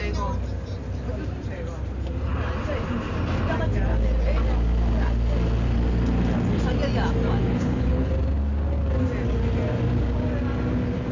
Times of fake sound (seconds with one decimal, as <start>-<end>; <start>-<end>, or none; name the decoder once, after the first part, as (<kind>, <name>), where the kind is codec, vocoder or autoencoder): 7.4-8.1 (codec, HILCodec)